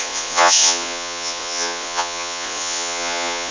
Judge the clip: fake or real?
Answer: fake